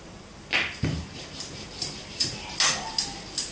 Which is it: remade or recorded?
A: recorded